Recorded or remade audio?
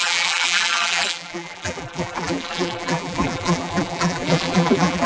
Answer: remade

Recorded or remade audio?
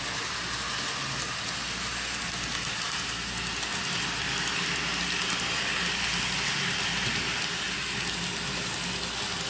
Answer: recorded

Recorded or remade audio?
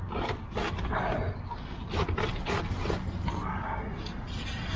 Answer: recorded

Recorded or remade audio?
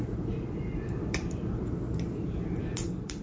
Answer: remade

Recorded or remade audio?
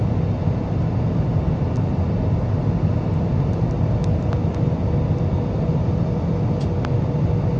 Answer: recorded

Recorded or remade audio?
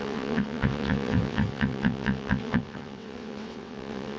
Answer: remade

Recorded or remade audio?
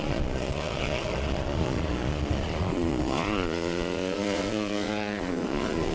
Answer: remade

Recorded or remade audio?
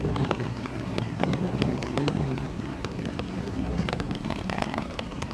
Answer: remade